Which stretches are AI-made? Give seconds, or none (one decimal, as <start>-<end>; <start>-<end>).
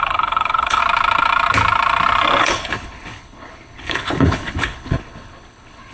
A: 0.0-0.8; 2.4-5.9